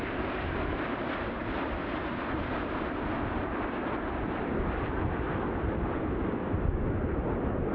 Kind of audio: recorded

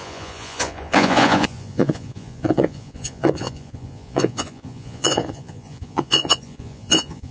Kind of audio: remade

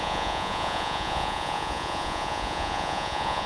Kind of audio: remade